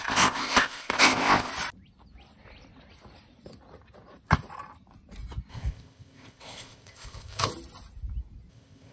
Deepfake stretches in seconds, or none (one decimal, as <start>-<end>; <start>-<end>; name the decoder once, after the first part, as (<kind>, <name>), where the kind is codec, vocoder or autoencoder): 0.0-1.5 (codec, ZipCodec); 5.5-7.5; 8.5-8.9

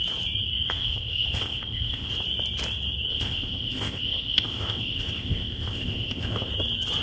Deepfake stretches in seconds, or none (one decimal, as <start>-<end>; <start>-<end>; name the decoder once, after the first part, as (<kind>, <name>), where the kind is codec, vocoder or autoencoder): 0.8-2.1 (codec, ZipCodec); 3.1-6.5

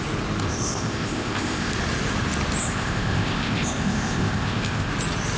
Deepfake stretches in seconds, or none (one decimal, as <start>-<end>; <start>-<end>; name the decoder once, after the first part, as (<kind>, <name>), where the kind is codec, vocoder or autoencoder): 0.4-1.7 (codec, ZipCodec); 2.6-4.9

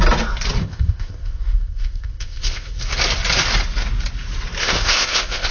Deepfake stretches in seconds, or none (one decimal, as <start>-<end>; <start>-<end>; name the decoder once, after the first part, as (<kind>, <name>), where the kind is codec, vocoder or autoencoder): 0.6-2.8 (codec, ZipCodec); 4.6-5.5